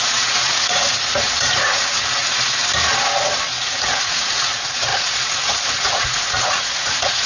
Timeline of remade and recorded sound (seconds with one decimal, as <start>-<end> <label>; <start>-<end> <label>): 0.0-2.6 remade; 2.6-3.6 recorded; 3.6-7.3 remade